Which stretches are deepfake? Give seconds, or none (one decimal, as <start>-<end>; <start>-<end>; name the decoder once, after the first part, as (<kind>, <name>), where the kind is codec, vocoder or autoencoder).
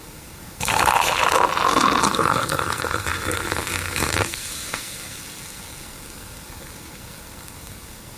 0.0-0.7 (codec, SNAC); 2.0-8.2